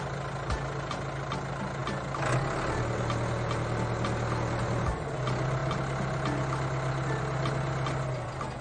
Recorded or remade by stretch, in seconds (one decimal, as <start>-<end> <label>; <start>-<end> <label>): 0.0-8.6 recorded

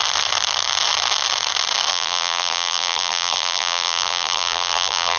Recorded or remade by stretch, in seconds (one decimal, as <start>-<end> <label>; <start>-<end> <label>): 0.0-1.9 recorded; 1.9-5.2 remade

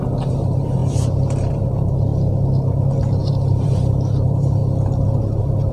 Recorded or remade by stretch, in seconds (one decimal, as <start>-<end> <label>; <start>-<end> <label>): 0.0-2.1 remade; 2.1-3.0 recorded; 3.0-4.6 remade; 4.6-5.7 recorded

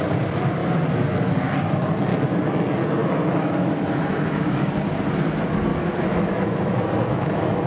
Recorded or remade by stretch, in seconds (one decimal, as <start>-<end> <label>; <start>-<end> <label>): 0.0-2.1 recorded; 2.1-2.6 remade; 2.6-3.0 recorded; 3.0-4.7 remade; 4.7-5.7 recorded; 5.7-7.7 remade

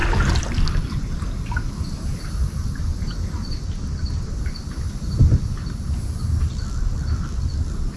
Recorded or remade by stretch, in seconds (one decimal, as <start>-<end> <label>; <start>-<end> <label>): 0.0-5.4 recorded; 5.4-6.1 remade; 6.1-8.0 recorded

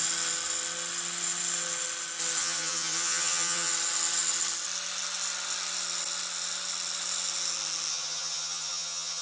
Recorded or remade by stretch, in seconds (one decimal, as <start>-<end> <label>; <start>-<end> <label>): 0.0-2.4 recorded; 2.4-3.7 remade; 3.7-7.9 recorded; 7.9-9.2 remade

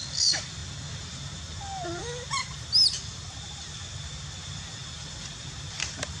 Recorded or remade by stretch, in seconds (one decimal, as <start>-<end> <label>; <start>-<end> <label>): 0.0-6.2 recorded

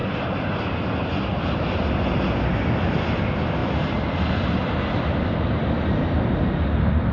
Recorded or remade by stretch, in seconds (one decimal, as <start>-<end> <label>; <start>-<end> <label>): 0.0-3.6 recorded; 3.6-6.2 remade; 6.2-7.1 recorded